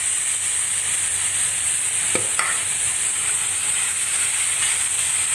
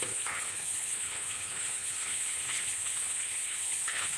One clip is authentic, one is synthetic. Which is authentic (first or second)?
first